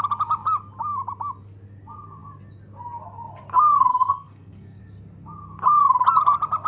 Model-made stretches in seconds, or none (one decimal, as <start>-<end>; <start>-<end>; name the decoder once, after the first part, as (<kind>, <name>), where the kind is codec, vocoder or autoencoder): 3.9-4.8 (codec, SNAC)